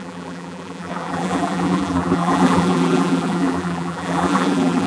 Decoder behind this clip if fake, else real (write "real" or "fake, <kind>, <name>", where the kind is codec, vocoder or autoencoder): fake, vocoder, BigVGAN v2